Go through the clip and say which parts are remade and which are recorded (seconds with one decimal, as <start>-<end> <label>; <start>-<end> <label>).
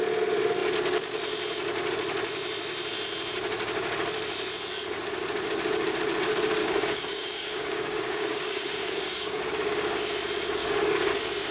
0.0-6.6 recorded; 6.6-9.4 remade; 9.4-10.6 recorded; 10.6-11.1 remade; 11.1-11.5 recorded